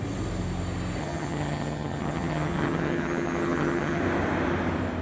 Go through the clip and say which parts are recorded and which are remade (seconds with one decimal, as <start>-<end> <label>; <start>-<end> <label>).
0.0-1.0 recorded; 1.0-4.0 remade; 4.0-5.0 recorded